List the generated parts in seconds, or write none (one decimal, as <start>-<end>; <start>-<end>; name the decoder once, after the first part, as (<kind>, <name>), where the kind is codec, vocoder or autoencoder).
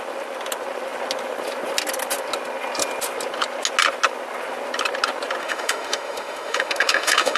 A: 5.4-7.4 (autoencoder, DAC-VAE)